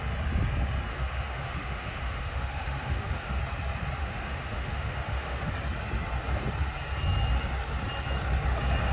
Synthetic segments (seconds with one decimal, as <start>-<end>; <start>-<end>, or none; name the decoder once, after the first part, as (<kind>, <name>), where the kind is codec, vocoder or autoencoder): 0.9-3.4 (autoencoder, DAC-VAE); 4.0-5.5